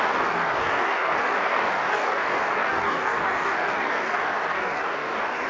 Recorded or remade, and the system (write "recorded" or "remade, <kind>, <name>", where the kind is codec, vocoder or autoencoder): remade, codec, DAC